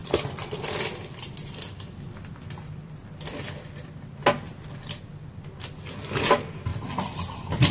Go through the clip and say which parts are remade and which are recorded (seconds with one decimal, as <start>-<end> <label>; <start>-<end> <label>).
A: 0.0-7.7 recorded